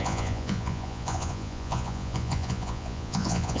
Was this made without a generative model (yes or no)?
no